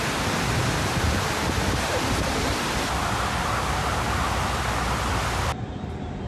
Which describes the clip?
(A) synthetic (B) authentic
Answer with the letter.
B